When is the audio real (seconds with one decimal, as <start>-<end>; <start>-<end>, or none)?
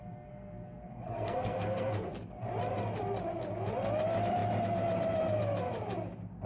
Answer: 2.1-6.5